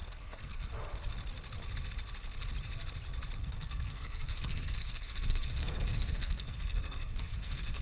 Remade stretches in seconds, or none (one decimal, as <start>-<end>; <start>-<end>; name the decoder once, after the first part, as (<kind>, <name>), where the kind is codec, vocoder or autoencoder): 0.0-0.7 (codec, SNAC); 3.4-7.8